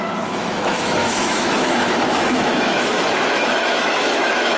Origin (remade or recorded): remade